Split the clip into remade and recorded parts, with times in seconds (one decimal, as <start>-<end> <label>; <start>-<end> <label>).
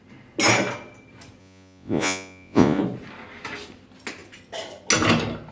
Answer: 0.0-1.4 recorded; 1.4-2.8 remade; 2.8-5.5 recorded